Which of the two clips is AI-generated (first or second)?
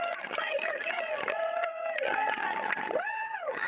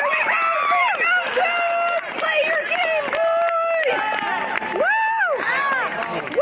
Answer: first